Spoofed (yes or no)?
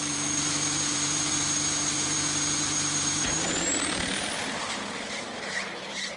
yes